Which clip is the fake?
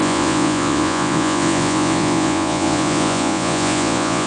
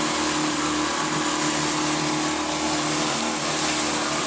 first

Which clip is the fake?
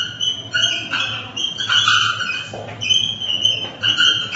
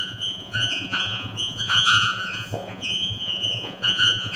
second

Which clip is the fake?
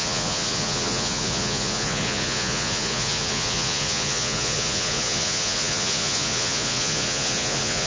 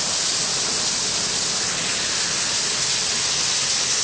first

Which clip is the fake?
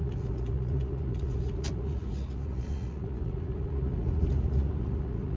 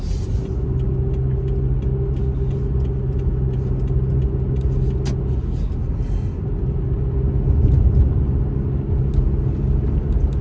first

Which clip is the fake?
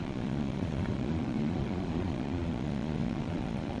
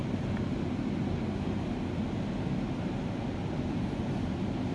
first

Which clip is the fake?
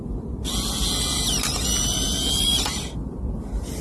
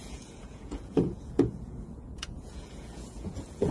second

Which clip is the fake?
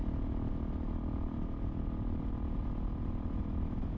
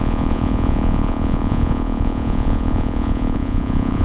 second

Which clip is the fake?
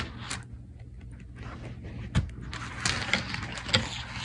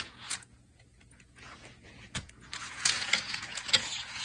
second